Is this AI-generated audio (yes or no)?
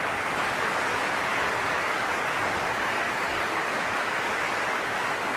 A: yes